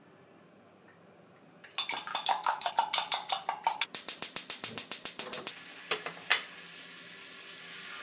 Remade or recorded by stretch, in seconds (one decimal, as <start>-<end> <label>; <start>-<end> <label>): 0.0-2.1 recorded; 2.1-2.7 remade; 2.7-8.0 recorded